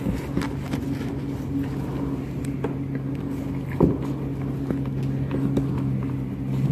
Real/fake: real